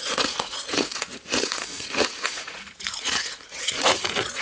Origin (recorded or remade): remade